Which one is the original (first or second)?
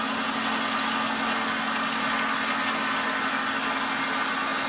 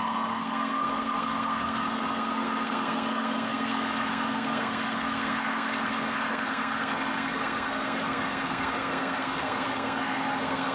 first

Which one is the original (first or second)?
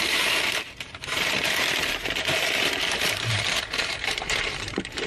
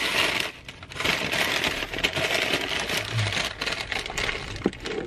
second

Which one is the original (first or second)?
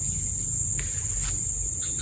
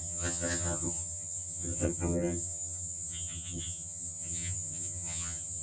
first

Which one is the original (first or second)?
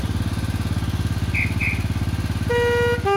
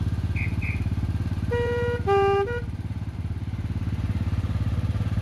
first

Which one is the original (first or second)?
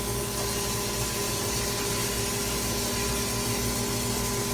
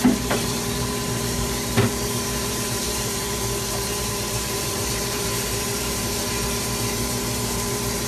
first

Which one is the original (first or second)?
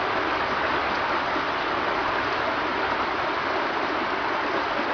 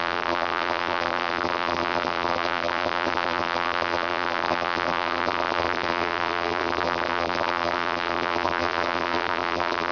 first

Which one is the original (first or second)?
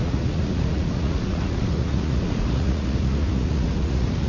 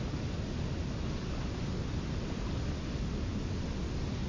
second